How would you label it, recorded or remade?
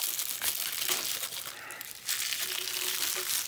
recorded